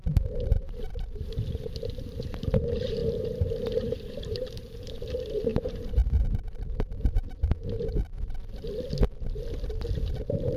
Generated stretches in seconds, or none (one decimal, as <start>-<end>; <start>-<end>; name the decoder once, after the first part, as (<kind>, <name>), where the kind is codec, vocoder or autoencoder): 0.0-7.6 (vocoder, BigVGAN v2); 10.2-10.6